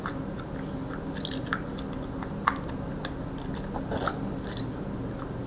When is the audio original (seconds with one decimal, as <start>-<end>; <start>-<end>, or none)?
0.0-5.5